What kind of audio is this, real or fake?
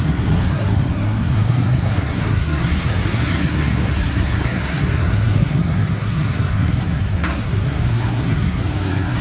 fake